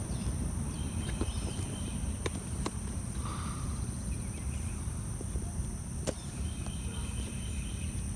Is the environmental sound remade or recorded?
remade